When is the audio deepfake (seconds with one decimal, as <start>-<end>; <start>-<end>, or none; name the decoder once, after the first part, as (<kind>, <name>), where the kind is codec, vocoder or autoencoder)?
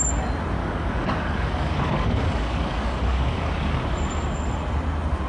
0.6-3.8 (codec, DAC)